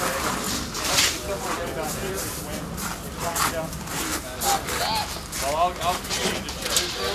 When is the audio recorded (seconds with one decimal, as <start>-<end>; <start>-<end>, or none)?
0.0-2.0; 2.6-7.1